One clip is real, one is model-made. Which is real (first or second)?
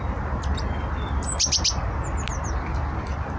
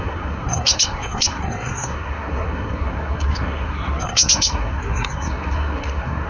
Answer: first